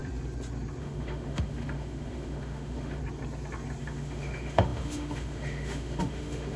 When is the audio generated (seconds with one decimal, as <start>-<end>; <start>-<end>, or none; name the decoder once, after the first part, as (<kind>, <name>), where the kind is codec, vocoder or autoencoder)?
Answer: 0.8-3.0 (autoencoder, DAC-VAE); 3.8-6.6